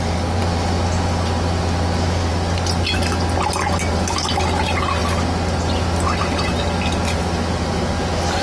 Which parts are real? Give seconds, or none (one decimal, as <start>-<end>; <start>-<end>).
0.0-8.4